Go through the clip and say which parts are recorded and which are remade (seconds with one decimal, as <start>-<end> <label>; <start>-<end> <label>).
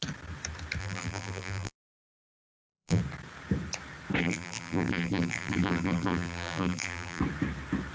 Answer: 0.0-0.8 recorded; 0.8-3.0 remade; 3.0-4.2 recorded; 4.2-7.2 remade; 7.2-7.9 recorded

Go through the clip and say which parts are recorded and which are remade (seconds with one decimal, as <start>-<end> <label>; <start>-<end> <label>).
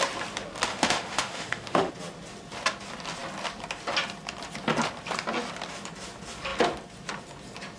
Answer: 0.0-0.7 recorded; 0.7-1.9 remade; 1.9-7.8 recorded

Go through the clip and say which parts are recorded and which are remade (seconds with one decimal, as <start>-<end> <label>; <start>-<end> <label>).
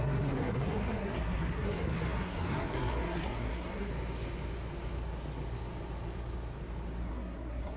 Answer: 0.0-3.9 remade; 3.9-7.0 recorded; 7.0-7.8 remade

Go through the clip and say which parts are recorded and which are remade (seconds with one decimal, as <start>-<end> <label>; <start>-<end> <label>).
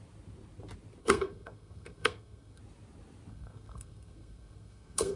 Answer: 0.0-1.0 recorded; 1.0-2.6 remade; 2.6-3.3 recorded; 3.3-5.2 remade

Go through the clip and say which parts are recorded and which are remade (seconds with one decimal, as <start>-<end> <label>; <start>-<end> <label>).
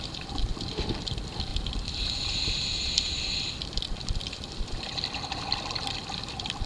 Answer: 0.0-1.5 remade; 1.5-3.4 recorded; 3.4-6.7 remade